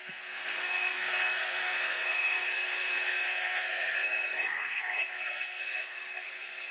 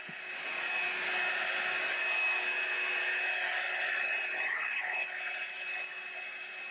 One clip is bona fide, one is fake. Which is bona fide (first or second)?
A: second